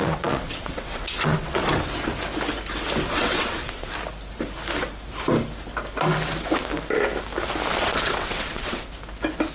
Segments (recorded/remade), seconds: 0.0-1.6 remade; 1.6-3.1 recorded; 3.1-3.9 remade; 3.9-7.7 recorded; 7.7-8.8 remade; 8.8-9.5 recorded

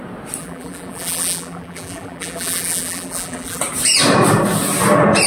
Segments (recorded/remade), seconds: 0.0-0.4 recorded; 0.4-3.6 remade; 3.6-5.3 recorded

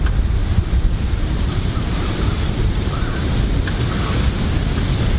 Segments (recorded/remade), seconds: 0.0-0.4 recorded; 0.4-3.5 remade; 3.5-5.2 recorded

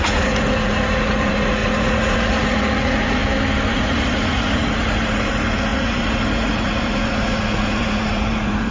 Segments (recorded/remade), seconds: 0.0-3.2 remade; 3.2-3.7 recorded; 3.7-8.7 remade